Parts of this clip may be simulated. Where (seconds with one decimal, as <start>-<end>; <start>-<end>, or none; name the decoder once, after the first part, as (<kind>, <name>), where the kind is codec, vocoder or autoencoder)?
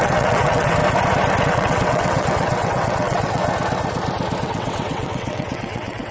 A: 0.0-0.8 (vocoder, WaveNeXt); 1.4-3.4; 4.4-6.1